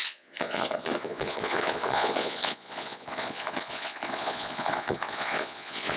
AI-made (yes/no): yes